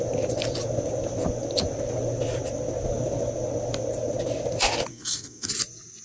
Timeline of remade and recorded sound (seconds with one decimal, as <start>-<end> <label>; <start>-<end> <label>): 0.0-4.9 recorded; 4.9-5.5 remade; 5.5-6.0 recorded